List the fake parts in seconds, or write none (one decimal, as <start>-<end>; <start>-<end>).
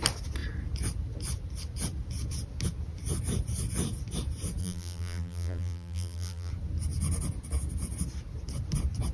4.6-6.5